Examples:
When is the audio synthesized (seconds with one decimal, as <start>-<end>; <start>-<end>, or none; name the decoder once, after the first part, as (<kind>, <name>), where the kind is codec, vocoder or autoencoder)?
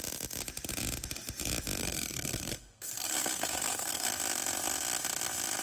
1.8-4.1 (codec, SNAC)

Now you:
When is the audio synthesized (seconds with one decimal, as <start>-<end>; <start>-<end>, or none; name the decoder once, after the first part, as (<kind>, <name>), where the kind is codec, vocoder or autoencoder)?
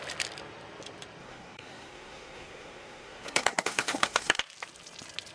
1.2-4.4 (codec, SNAC)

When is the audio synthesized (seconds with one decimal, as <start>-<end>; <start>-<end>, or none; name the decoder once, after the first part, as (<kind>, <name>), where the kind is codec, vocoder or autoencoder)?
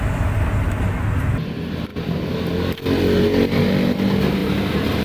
1.9-2.5 (vocoder, BigVGAN v2); 4.4-5.0